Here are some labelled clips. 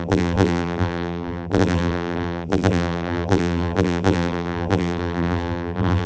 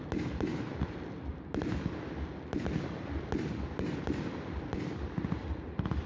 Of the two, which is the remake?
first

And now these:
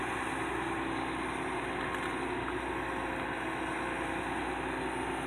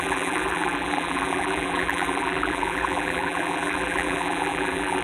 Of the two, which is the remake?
second